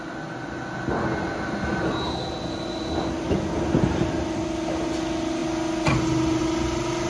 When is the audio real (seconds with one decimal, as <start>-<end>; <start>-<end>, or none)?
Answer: 0.0-7.1